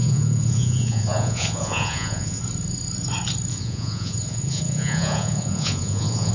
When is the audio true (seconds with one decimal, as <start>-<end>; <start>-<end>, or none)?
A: 2.4-3.5